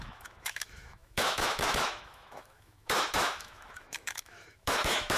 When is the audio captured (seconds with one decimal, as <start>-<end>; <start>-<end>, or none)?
none